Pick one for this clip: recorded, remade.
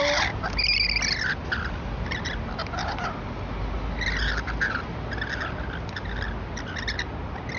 recorded